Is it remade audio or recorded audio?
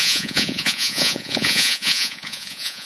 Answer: remade